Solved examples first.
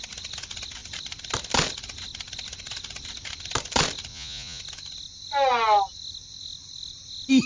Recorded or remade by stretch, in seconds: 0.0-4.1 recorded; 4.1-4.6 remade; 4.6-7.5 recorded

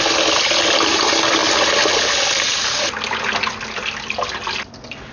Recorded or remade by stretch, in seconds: 0.0-5.1 recorded

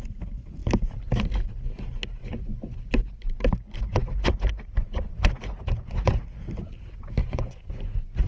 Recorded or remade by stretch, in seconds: 0.0-2.2 recorded; 2.2-2.9 remade; 2.9-3.9 recorded; 3.9-6.2 remade; 6.2-7.2 recorded; 7.2-8.3 remade

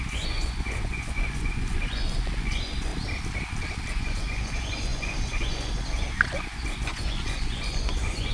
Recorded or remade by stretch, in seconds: 0.0-2.9 remade; 2.9-3.9 recorded; 3.9-8.3 remade

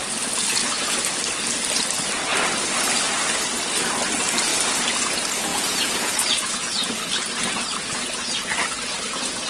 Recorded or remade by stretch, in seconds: 0.0-5.5 recorded; 5.5-6.9 remade; 6.9-9.5 recorded

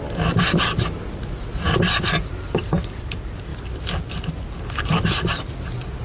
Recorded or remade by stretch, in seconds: 0.0-6.0 recorded